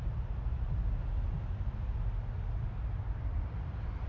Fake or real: real